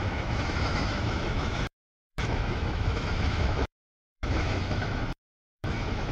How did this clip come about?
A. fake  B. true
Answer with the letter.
A